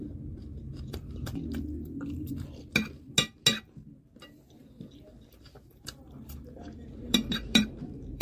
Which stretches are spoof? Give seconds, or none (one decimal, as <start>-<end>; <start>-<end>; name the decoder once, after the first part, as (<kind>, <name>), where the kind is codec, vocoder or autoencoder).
0.0-1.3 (vocoder, BigVGAN v2); 5.4-8.2